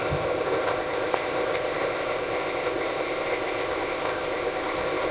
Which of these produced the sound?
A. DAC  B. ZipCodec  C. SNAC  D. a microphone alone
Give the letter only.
B